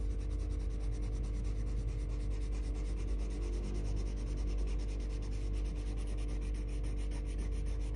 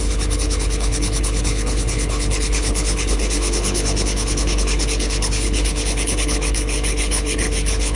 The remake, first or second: second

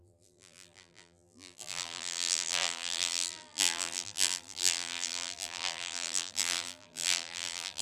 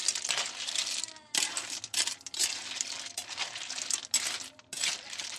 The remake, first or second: first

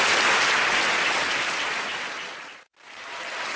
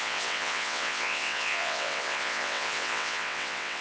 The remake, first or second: second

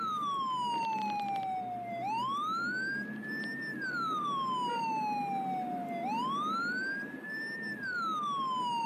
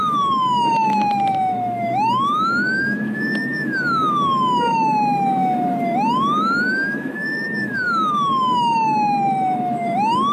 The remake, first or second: second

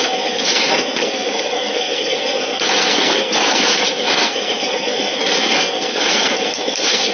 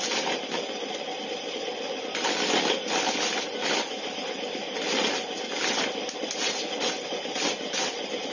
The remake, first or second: first